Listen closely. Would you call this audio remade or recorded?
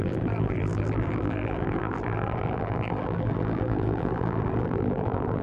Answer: remade